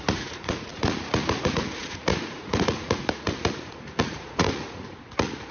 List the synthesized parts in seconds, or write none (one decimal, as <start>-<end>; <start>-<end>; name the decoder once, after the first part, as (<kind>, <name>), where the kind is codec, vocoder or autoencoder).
0.0-5.5 (vocoder, Vocos)